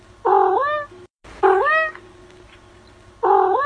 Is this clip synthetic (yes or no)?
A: no